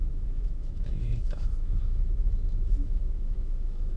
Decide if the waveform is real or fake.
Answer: fake